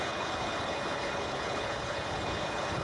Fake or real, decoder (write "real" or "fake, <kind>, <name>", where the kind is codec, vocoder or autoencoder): fake, codec, HILCodec